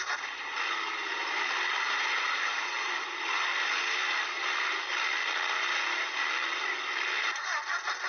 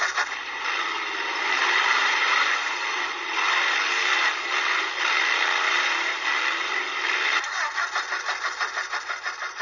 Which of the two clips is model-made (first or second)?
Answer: second